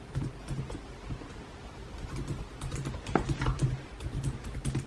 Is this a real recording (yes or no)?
no